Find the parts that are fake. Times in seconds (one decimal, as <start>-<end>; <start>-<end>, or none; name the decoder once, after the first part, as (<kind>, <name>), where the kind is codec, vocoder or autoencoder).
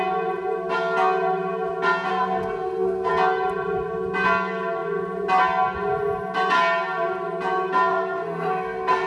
2.1-3.1 (codec, SNAC); 7.9-9.1